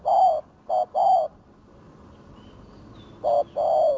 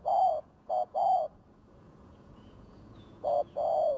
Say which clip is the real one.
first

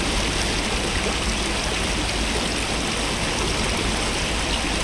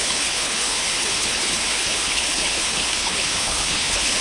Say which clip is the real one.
first